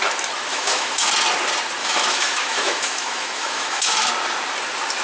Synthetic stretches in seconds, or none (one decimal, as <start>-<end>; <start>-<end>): 0.5-1.1; 1.8-4.1